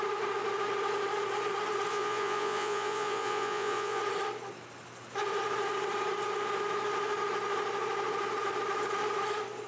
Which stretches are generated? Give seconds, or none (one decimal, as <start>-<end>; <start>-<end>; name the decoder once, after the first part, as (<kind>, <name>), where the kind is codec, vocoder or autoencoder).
1.9-4.0 (vocoder, Vocos)